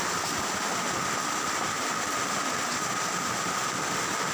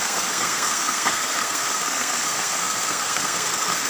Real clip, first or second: first